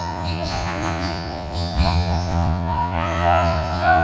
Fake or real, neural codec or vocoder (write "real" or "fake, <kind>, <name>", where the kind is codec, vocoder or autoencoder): fake, vocoder, Vocos